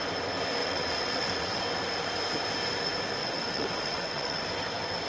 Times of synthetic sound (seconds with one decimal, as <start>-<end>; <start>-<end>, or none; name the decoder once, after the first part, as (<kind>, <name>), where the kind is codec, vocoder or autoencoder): 0.6-1.6 (vocoder, WaveNeXt); 3.2-4.4